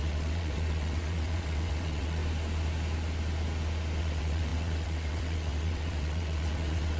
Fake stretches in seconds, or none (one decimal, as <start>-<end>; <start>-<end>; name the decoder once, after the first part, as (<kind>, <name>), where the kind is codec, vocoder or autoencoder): 0.0-2.2 (vocoder, WaveNeXt); 4.0-7.0